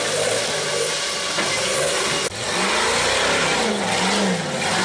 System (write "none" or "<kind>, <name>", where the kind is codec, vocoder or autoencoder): none